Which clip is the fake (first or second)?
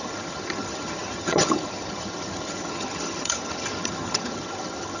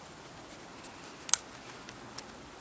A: first